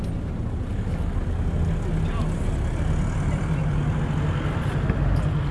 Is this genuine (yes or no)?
yes